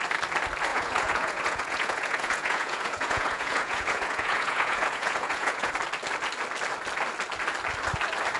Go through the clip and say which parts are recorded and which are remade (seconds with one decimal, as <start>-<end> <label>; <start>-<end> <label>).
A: 0.0-0.7 recorded; 0.7-5.7 remade; 5.7-8.4 recorded